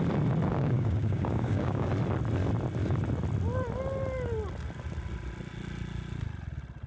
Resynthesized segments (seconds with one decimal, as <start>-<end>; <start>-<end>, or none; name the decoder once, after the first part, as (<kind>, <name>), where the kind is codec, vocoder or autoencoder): 0.5-1.9 (codec, DAC)